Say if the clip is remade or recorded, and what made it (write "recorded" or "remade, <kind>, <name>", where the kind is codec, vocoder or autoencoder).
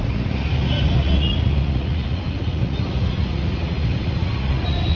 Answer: remade, vocoder, Vocos